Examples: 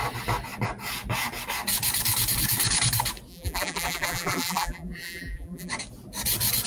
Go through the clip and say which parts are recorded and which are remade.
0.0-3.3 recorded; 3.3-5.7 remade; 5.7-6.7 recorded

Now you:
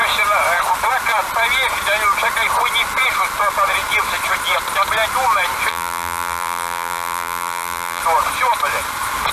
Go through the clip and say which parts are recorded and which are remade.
0.0-5.7 recorded; 5.7-8.0 remade; 8.0-9.3 recorded

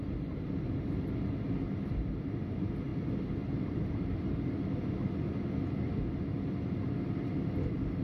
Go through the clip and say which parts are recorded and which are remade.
0.0-8.0 recorded

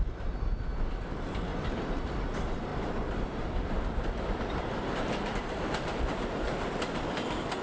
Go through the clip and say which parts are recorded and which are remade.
0.0-1.5 recorded; 1.5-2.0 remade; 2.0-2.7 recorded; 2.7-7.1 remade; 7.1-7.6 recorded